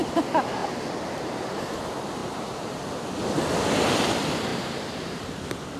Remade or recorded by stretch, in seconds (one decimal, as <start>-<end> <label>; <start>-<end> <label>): 0.0-0.6 recorded; 0.6-1.8 remade; 1.8-2.2 recorded; 2.2-2.9 remade; 2.9-4.5 recorded; 4.5-5.3 remade; 5.3-5.8 recorded